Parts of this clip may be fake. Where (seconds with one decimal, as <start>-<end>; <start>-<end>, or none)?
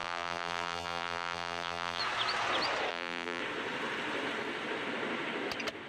0.0-2.0; 2.9-3.4